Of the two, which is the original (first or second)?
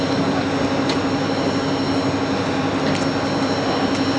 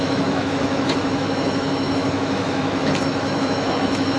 first